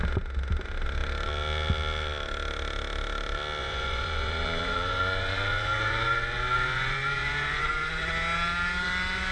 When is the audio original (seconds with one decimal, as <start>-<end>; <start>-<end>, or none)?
0.0-3.6; 8.1-9.3